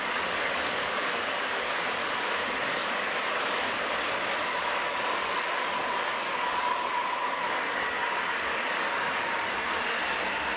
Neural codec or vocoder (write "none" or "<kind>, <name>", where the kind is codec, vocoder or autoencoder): codec, DAC